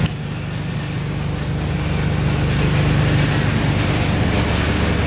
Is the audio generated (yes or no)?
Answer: no